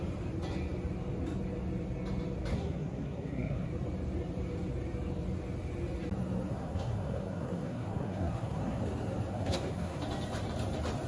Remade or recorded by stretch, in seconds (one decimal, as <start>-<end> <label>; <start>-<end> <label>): 0.0-2.5 recorded; 2.5-3.7 remade; 3.7-6.5 recorded; 6.5-8.8 remade; 8.8-9.3 recorded; 9.3-10.0 remade; 10.0-11.1 recorded